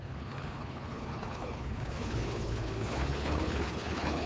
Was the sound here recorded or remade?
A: remade